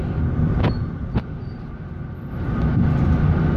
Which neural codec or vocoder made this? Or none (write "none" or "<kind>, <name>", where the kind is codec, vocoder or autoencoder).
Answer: none